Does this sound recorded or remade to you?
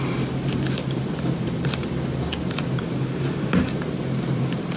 remade